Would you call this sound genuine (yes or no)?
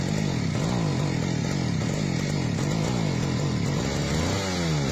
yes